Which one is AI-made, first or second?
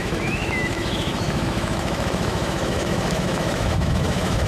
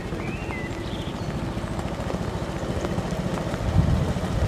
first